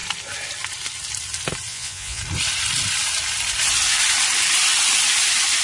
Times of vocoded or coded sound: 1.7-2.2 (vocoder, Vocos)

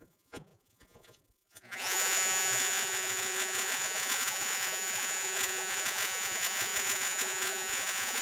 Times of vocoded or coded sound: 0.0-8.2 (vocoder, Vocos)

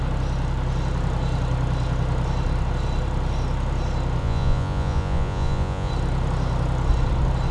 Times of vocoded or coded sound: 4.2-5.9 (vocoder, Vocos)

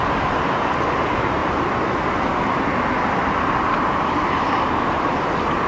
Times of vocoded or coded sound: none

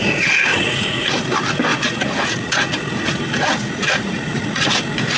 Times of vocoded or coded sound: 0.5-1.1 (vocoder, Vocos); 1.7-2.8; 3.6-4.7

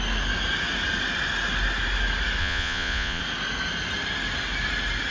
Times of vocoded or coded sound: 2.4-3.2 (vocoder, Vocos)

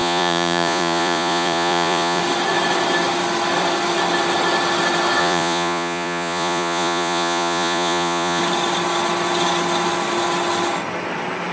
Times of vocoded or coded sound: 0.0-2.2 (vocoder, Vocos); 5.2-8.4

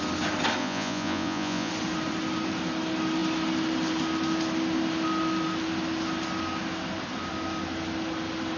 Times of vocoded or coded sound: 0.6-1.7 (vocoder, Vocos)